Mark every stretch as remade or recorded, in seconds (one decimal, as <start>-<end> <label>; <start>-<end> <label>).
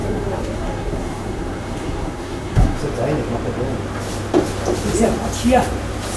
0.0-2.8 remade; 2.8-6.2 recorded